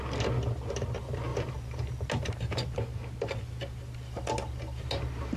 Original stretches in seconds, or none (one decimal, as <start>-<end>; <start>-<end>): 0.0-5.4